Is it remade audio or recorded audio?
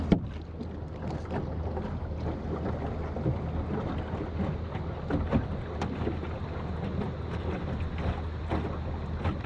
recorded